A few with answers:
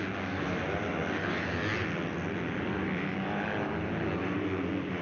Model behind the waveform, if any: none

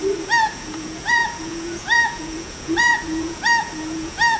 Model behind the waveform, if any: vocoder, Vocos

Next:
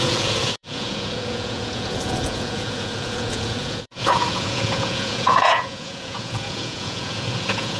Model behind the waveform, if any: vocoder, Vocos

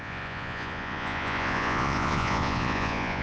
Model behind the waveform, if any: vocoder, Vocos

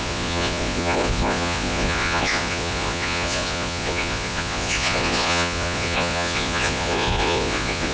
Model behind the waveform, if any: vocoder, Vocos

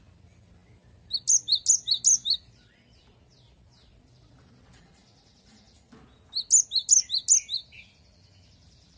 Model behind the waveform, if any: none